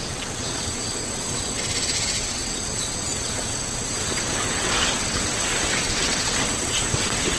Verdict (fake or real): fake